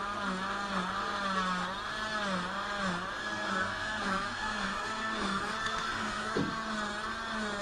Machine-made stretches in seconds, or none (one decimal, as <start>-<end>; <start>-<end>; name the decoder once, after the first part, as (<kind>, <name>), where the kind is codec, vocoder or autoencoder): 3.2-6.4 (codec, SNAC)